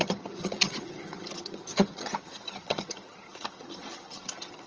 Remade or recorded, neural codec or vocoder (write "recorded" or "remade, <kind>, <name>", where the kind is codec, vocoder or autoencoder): remade, vocoder, HiFi-GAN